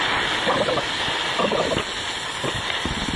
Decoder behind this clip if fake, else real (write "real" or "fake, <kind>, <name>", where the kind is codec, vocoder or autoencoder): real